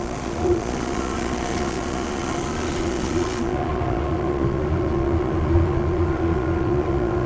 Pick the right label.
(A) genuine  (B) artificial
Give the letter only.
B